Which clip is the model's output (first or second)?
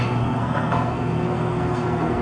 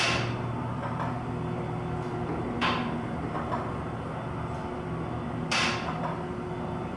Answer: first